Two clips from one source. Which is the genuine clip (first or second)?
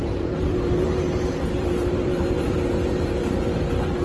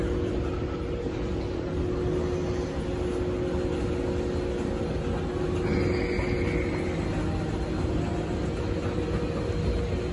second